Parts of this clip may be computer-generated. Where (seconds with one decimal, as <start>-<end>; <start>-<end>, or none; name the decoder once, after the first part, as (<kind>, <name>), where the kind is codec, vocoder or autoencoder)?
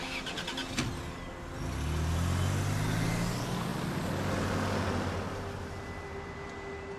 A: none